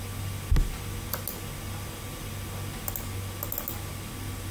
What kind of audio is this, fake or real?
real